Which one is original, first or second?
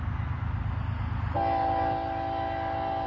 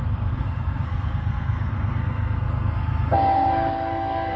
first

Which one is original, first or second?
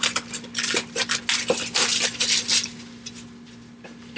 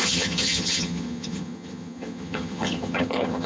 first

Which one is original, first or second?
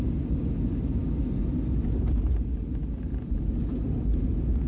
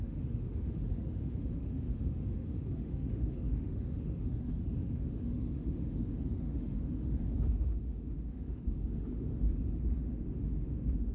first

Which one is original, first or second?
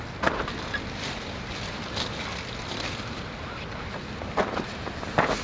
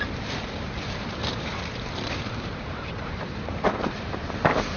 first